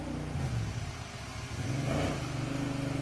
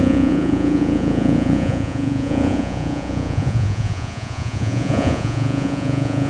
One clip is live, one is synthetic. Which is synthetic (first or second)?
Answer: second